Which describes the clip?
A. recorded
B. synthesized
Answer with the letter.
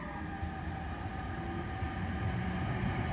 A